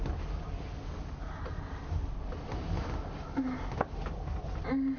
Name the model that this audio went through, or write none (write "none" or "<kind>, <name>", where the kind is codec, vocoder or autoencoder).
none